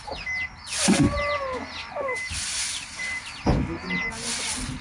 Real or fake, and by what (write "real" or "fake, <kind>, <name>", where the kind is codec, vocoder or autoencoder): real